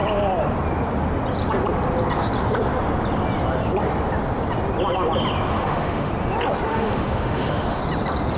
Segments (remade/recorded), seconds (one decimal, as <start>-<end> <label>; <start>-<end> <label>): 0.0-5.5 recorded; 5.5-6.1 remade; 6.1-6.7 recorded; 6.7-7.8 remade; 7.8-8.4 recorded

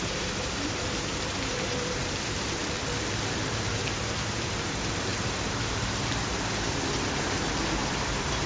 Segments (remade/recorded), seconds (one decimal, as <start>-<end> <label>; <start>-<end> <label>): 0.0-2.6 remade; 2.6-3.5 recorded; 3.5-8.5 remade

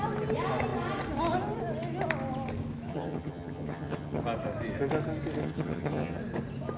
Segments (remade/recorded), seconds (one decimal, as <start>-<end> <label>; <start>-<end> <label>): 0.0-2.9 recorded; 2.9-4.2 remade; 4.2-5.4 recorded; 5.4-6.2 remade; 6.2-6.8 recorded

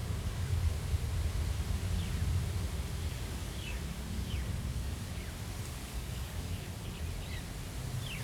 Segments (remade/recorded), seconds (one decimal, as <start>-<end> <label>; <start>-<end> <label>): 0.0-0.7 remade; 0.7-3.0 recorded; 3.0-5.2 remade; 5.2-5.8 recorded; 5.8-6.7 remade; 6.7-8.2 recorded

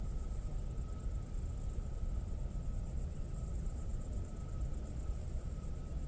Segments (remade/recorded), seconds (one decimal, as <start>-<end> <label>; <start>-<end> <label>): 0.0-0.5 remade; 0.5-3.4 recorded; 3.4-3.9 remade; 3.9-5.1 recorded; 5.1-6.1 remade

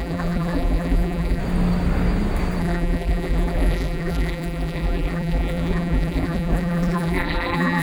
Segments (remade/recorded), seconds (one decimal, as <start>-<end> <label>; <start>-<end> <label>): 0.0-1.4 remade; 1.4-2.6 recorded; 2.6-7.8 remade

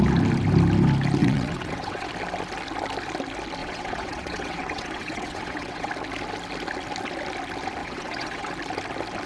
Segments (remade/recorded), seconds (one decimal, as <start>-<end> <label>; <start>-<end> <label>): 0.0-1.2 recorded; 1.2-2.1 remade; 2.1-3.6 recorded; 3.6-5.9 remade; 5.9-7.8 recorded; 7.8-8.5 remade; 8.5-9.3 recorded

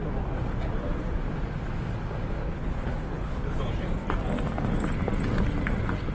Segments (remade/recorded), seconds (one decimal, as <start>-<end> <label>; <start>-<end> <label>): 0.0-2.4 recorded; 2.4-3.6 remade; 3.6-6.1 recorded